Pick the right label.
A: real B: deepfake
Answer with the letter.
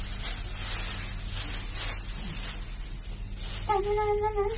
A